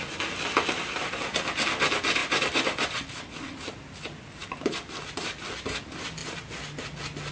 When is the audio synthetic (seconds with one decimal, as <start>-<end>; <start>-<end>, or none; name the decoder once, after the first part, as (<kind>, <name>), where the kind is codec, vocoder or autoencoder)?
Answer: 2.2-3.2 (vocoder, BigVGAN v2)